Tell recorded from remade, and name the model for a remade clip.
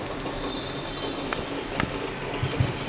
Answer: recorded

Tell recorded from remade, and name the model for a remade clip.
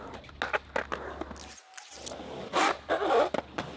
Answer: recorded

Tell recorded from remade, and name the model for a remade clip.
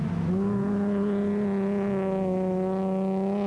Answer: recorded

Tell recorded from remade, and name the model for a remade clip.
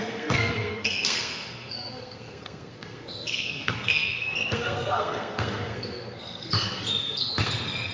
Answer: remade, codec, SNAC